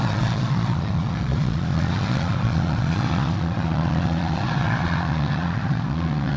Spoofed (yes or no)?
yes